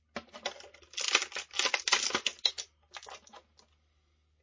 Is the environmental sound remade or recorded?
recorded